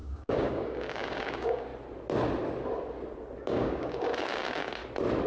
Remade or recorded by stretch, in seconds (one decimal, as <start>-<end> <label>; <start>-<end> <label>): 0.0-1.7 remade; 1.7-3.4 recorded; 3.4-4.8 remade; 4.8-5.3 recorded